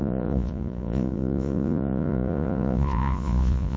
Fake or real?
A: fake